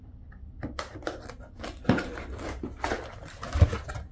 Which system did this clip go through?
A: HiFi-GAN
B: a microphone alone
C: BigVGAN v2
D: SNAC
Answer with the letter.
B